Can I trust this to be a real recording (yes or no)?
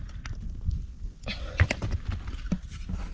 yes